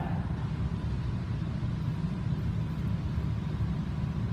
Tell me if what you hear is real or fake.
real